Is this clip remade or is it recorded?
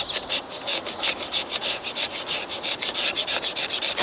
recorded